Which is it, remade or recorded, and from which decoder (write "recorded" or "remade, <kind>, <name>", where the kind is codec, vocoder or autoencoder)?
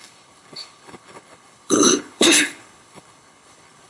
remade, codec, HILCodec